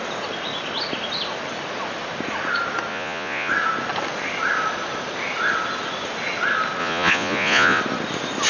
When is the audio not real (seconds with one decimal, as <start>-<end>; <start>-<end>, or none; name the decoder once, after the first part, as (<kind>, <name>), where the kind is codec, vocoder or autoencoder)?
2.9-3.5 (vocoder, Vocos); 6.8-7.8